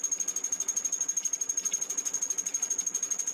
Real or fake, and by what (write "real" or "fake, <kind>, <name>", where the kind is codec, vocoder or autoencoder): real